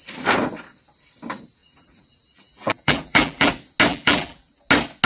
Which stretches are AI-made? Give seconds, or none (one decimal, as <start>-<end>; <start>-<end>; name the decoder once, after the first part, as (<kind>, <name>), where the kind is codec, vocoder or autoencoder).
1.6-3.5 (vocoder, BigVGAN v2); 3.9-4.6